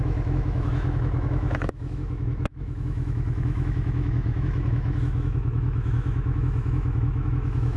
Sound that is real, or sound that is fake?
fake